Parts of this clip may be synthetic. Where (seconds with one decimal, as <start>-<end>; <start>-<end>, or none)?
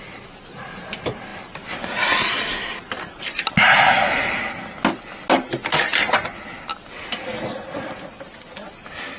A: none